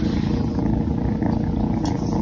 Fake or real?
real